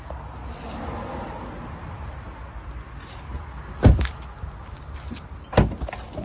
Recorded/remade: recorded